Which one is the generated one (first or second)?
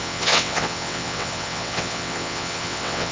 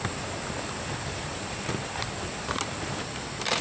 first